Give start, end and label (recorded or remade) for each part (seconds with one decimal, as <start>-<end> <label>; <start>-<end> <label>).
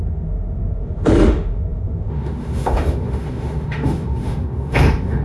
0.0-5.2 remade